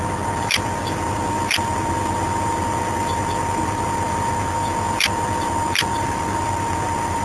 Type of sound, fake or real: fake